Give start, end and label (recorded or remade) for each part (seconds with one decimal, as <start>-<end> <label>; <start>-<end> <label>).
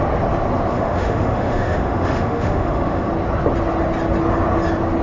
0.0-0.7 recorded; 0.7-3.1 remade; 3.1-5.0 recorded